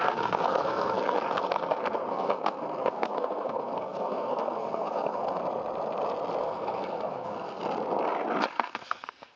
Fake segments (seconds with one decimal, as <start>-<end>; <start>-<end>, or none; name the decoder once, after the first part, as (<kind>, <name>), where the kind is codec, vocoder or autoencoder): 0.0-5.4 (codec, SNAC); 6.4-7.6; 8.5-9.4